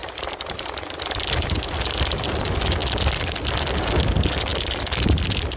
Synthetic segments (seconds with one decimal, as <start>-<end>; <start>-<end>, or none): none